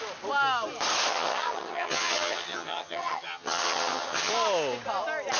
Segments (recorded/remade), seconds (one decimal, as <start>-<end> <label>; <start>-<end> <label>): 0.0-1.1 recorded; 1.1-4.3 remade; 4.3-5.4 recorded